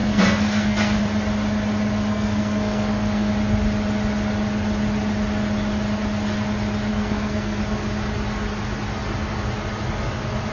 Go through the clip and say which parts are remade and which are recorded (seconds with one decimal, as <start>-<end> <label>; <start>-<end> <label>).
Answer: 0.0-1.0 remade; 1.0-2.1 recorded; 2.1-3.3 remade; 3.3-6.9 recorded; 6.9-7.6 remade; 7.6-10.5 recorded